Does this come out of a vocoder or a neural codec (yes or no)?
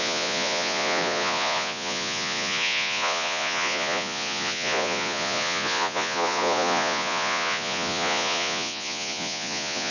yes